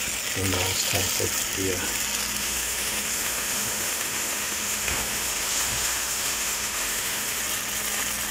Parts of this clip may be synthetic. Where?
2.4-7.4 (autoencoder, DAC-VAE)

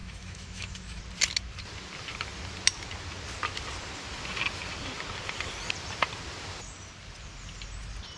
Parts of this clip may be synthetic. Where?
0.0-1.0 (autoencoder, DAC-VAE)

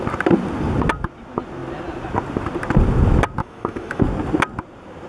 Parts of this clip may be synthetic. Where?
3.4-4.0 (autoencoder, DAC-VAE)

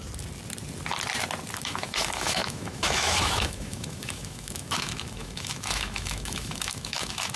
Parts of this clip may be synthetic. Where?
1.6-7.4 (autoencoder, DAC-VAE)

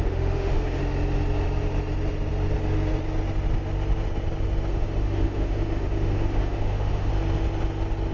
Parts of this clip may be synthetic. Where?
0.0-0.8 (autoencoder, DAC-VAE); 4.7-7.1

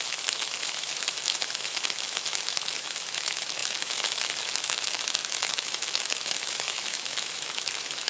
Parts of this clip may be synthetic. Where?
0.0-8.1 (autoencoder, DAC-VAE)